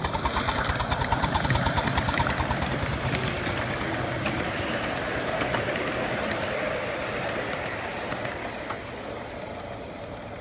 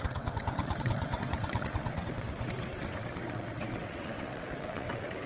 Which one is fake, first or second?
second